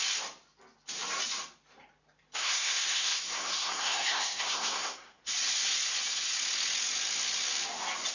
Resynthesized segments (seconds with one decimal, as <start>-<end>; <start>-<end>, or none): 2.4-5.2